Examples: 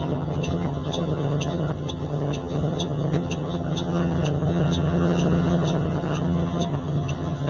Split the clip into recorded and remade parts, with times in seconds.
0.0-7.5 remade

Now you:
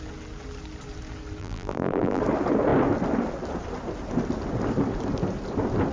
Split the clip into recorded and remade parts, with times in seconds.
0.0-1.4 recorded; 1.4-2.2 remade; 2.2-5.9 recorded